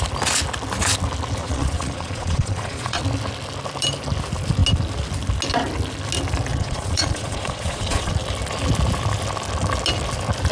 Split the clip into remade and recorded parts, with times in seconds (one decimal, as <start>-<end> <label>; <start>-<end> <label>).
0.0-1.4 recorded; 1.4-3.0 remade; 3.0-6.5 recorded; 6.5-8.1 remade; 8.1-10.5 recorded